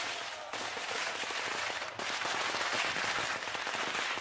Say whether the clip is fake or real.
fake